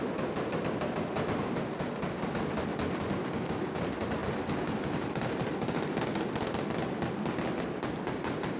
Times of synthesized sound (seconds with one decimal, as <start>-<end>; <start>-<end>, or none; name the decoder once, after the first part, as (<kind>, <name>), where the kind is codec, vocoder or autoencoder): 3.2-3.8 (codec, DAC)

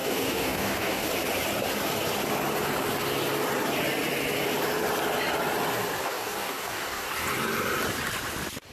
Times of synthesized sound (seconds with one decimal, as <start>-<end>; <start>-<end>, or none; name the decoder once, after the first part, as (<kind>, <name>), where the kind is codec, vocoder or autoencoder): 0.0-1.1 (codec, DAC); 6.0-7.1

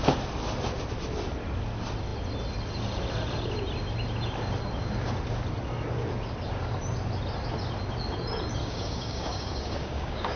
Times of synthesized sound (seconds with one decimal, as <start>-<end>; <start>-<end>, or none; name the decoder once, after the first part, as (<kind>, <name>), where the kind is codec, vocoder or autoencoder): 8.6-10.4 (codec, DAC)

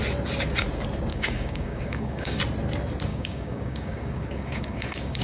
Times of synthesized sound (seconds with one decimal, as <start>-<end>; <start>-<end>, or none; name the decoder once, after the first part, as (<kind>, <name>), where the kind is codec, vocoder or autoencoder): 1.1-2.4 (codec, DAC); 3.1-5.2